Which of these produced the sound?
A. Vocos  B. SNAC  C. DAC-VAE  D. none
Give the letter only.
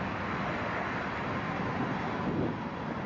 D